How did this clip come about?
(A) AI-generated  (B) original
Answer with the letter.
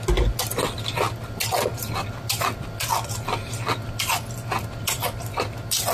B